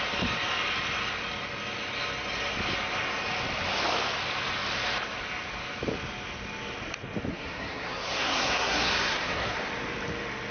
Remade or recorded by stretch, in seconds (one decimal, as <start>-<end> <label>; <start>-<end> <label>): 0.0-7.3 recorded; 7.3-9.7 remade; 9.7-10.5 recorded

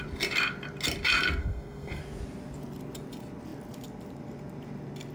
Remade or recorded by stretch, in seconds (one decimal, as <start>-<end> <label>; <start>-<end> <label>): 0.0-1.4 recorded; 1.4-2.0 remade; 2.0-5.1 recorded

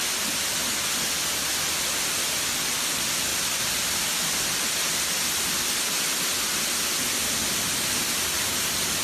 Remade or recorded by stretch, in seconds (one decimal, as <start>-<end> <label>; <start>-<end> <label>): 0.0-9.0 recorded

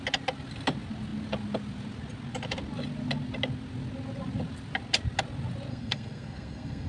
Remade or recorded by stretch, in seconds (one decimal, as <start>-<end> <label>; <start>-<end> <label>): 0.0-5.7 recorded; 5.7-6.9 remade